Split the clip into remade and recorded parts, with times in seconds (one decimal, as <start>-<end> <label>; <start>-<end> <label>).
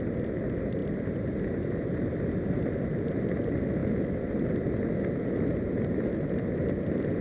0.0-7.2 recorded